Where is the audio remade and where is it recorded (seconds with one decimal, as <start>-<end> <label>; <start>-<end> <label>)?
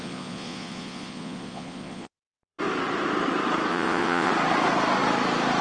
0.0-2.6 remade; 2.6-3.7 recorded; 3.7-4.3 remade; 4.3-5.6 recorded